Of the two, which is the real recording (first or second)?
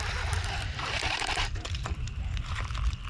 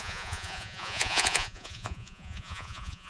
first